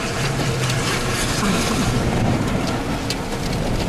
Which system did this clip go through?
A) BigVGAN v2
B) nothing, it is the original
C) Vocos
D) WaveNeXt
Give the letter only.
A